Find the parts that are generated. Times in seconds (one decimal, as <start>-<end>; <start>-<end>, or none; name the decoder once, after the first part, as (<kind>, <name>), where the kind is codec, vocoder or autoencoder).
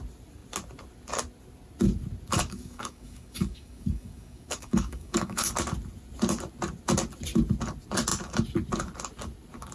2.3-5.5 (codec, DAC)